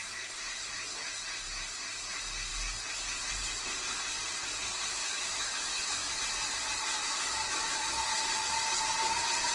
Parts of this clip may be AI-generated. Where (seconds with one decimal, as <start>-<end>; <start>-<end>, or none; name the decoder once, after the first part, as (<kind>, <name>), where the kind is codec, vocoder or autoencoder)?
5.0-6.2 (autoencoder, DAC-VAE); 7.0-8.0